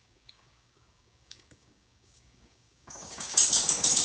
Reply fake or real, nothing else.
fake